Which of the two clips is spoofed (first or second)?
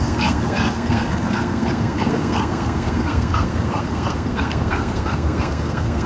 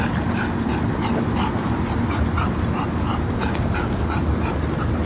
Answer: first